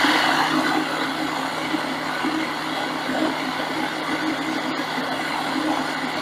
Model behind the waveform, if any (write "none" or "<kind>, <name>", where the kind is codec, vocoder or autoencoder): none